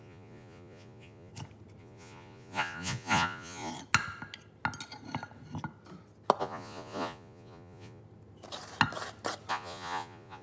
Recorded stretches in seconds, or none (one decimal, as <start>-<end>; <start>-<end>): 1.3-1.8; 3.7-6.4; 8.0-9.5